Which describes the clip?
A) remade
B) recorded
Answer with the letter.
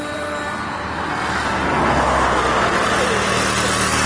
B